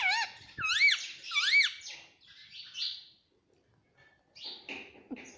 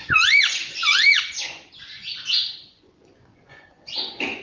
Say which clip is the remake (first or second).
second